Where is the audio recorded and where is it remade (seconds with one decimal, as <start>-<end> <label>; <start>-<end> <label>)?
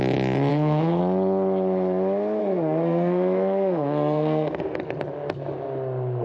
0.0-0.5 recorded; 0.5-1.0 remade; 1.0-2.4 recorded; 2.4-4.8 remade; 4.8-6.2 recorded